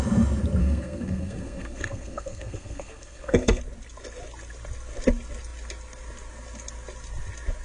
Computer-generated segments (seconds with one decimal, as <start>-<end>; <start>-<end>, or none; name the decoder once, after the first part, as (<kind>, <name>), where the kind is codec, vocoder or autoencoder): 0.6-3.6 (codec, SNAC)